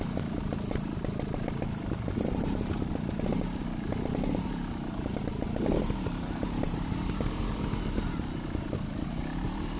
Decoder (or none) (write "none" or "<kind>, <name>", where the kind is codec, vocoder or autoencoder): vocoder, BigVGAN v2